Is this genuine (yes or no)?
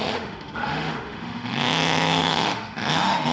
no